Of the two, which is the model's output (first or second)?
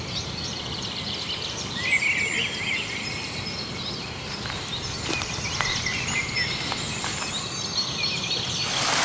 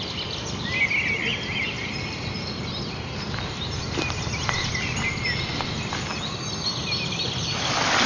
first